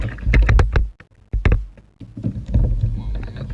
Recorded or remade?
recorded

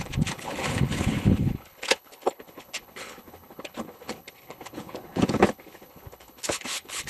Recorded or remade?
remade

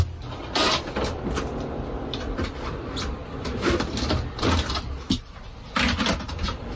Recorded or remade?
recorded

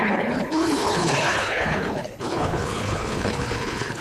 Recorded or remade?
remade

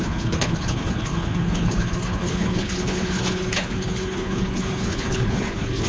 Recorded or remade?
remade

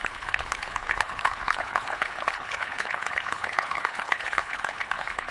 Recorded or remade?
remade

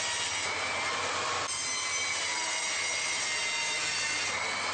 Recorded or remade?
recorded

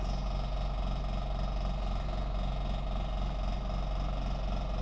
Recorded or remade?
recorded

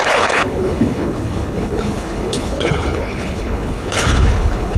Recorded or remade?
remade